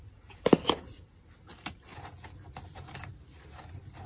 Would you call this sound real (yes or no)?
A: yes